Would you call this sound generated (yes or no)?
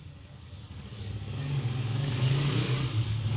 yes